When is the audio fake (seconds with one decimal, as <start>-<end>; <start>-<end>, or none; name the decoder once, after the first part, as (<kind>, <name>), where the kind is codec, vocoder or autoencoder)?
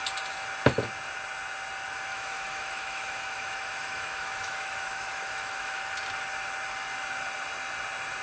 2.1-5.8 (autoencoder, DAC-VAE)